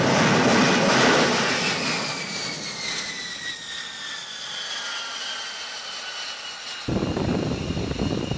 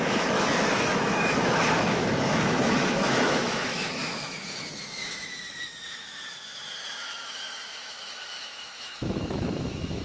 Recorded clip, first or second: first